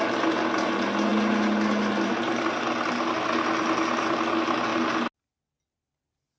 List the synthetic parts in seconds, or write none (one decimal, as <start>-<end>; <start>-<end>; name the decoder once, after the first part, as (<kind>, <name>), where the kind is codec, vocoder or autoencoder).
none